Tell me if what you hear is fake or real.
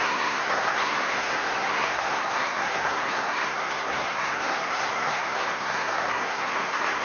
fake